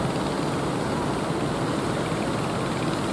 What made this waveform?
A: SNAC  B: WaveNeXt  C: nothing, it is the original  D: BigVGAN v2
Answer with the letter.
C